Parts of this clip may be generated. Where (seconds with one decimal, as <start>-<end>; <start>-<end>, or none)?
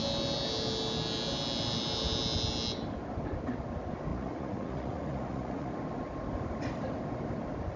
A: 4.1-5.7